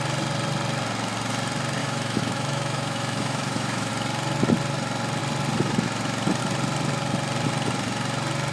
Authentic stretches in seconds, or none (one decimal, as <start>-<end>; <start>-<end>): 0.0-1.8; 3.9-8.5